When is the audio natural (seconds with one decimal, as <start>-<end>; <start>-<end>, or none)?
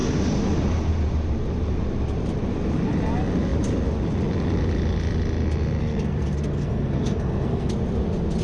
0.0-5.8; 7.7-8.4